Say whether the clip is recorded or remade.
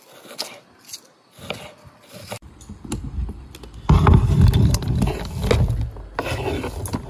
recorded